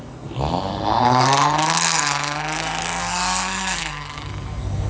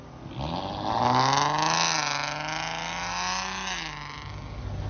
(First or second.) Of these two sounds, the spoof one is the first